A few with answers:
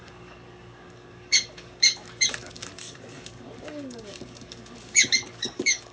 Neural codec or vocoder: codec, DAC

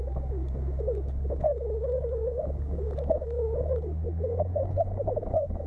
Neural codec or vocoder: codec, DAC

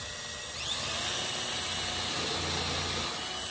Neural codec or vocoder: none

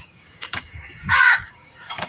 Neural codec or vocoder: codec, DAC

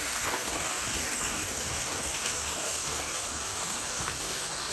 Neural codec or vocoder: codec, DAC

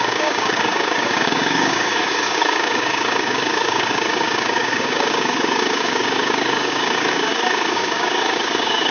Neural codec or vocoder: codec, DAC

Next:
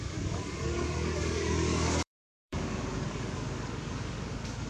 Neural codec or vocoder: codec, DAC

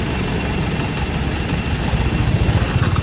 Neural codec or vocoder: none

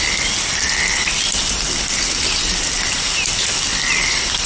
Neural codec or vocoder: none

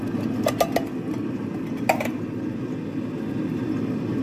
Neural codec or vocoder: none